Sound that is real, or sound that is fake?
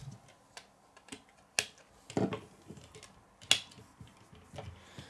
real